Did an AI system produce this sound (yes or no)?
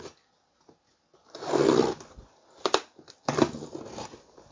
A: no